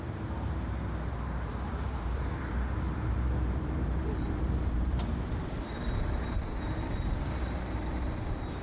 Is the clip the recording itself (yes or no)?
no